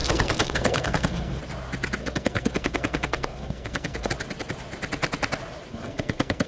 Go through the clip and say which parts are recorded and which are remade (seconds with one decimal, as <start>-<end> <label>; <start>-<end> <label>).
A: 0.0-1.4 remade; 1.4-2.0 recorded; 2.0-4.1 remade; 4.1-5.7 recorded; 5.7-6.5 remade